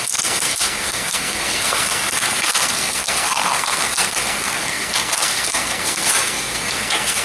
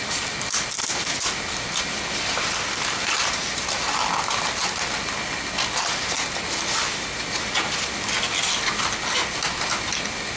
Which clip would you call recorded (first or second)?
second